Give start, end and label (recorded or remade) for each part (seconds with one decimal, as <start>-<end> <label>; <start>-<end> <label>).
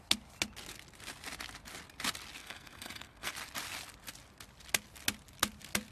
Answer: 0.0-2.4 recorded; 2.4-3.3 remade; 3.3-5.9 recorded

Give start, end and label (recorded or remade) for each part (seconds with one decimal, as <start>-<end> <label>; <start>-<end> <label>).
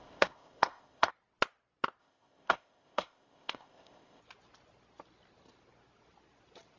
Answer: 0.0-1.1 remade; 1.1-2.0 recorded; 2.0-4.2 remade; 4.2-6.8 recorded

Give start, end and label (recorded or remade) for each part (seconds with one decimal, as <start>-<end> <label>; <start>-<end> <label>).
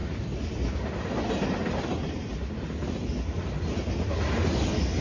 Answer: 0.0-5.0 recorded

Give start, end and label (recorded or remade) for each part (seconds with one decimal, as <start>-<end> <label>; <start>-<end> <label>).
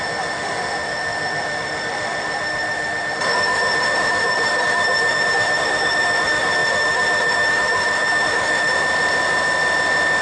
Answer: 0.0-8.7 remade; 8.7-10.2 recorded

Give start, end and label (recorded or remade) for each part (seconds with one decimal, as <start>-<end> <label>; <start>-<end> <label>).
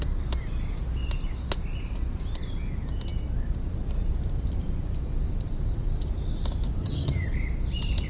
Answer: 0.0-6.8 recorded; 6.8-7.3 remade; 7.3-8.1 recorded